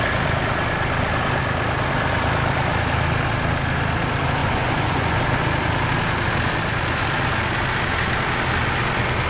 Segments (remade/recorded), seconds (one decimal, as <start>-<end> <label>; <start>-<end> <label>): 0.0-4.4 recorded; 4.4-5.2 remade; 5.2-9.3 recorded